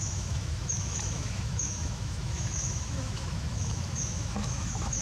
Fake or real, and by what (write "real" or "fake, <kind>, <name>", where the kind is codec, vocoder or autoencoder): fake, autoencoder, DAC-VAE